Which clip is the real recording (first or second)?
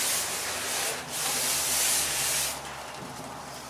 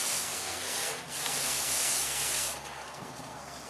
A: first